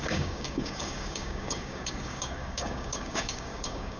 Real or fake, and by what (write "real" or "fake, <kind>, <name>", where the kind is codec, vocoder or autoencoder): fake, codec, DAC